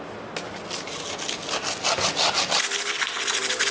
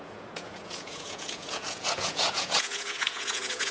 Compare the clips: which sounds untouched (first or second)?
first